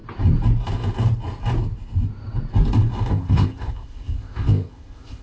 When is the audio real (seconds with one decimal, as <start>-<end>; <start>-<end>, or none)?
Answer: 0.0-3.1